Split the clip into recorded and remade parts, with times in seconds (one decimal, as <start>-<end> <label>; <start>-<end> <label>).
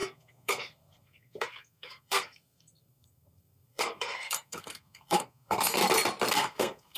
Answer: 0.0-5.8 remade; 5.8-6.3 recorded; 6.3-7.0 remade